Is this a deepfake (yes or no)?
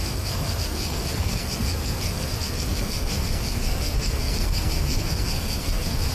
yes